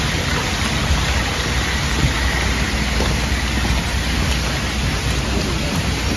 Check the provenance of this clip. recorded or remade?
recorded